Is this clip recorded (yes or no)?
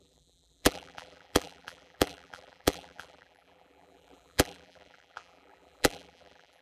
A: no